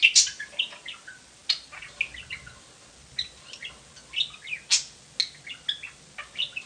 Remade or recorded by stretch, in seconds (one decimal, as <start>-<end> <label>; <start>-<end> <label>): 0.0-6.7 recorded